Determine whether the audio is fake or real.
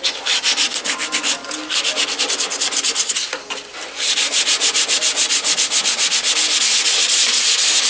real